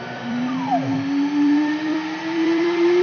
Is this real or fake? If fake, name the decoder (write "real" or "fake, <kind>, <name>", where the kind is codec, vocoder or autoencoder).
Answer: fake, vocoder, BigVGAN v2